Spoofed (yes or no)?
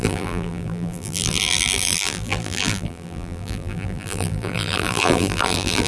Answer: yes